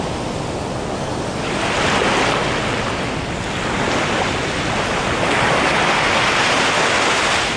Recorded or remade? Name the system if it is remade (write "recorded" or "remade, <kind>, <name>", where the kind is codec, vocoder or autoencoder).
recorded